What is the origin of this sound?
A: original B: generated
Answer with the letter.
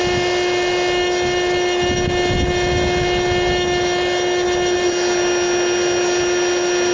A